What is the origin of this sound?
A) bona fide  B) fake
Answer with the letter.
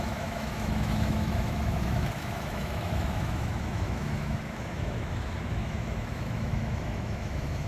B